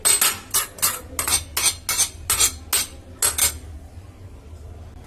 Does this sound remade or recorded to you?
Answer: recorded